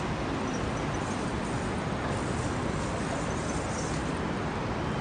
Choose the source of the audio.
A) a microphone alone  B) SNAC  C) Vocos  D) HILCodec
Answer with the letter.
A